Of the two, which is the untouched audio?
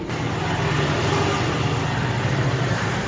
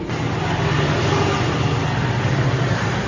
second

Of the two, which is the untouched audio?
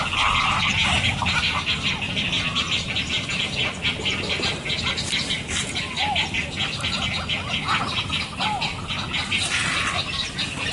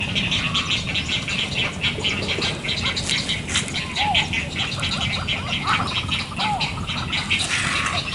second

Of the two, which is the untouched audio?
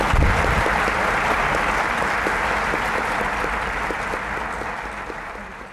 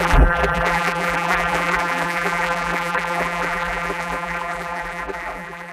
first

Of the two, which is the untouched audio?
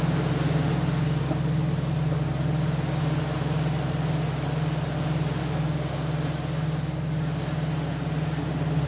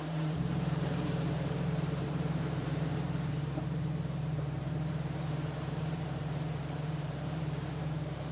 first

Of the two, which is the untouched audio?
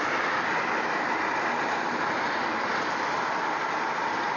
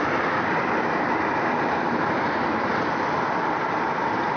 first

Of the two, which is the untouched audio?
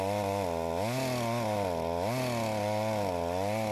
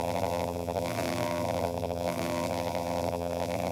first